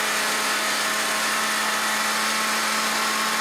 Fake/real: real